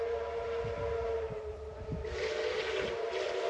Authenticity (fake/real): real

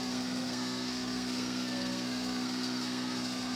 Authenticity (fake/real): fake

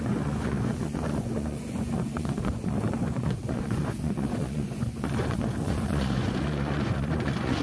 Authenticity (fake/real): fake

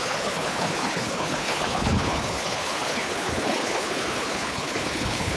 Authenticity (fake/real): fake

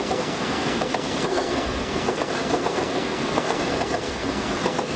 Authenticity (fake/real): fake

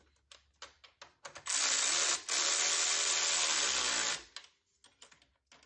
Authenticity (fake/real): real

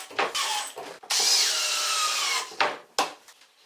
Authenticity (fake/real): real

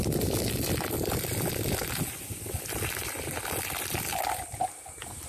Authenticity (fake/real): real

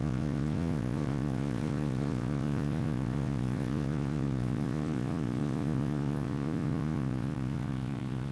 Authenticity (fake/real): fake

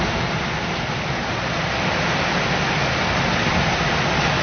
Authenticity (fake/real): real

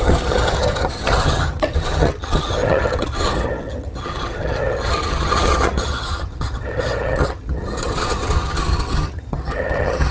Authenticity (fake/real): fake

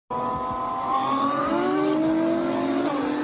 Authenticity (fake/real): real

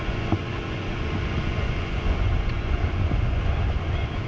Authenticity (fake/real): fake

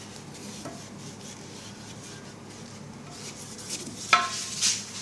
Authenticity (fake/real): real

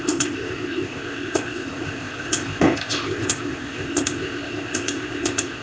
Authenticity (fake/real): fake